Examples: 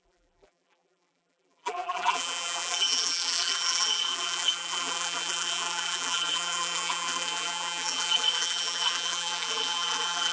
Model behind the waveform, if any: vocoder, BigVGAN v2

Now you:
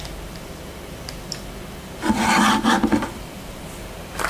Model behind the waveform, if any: none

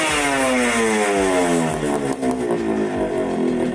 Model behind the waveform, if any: none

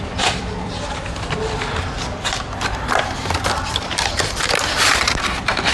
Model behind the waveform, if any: vocoder, BigVGAN v2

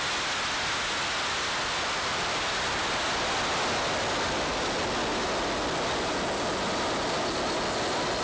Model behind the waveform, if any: none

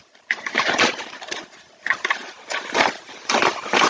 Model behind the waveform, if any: vocoder, BigVGAN v2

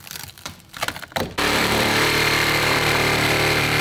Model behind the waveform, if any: vocoder, BigVGAN v2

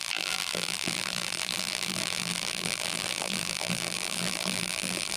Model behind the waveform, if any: vocoder, BigVGAN v2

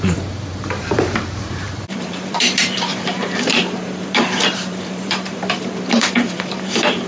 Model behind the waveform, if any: vocoder, BigVGAN v2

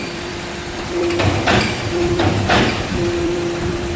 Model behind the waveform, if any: vocoder, BigVGAN v2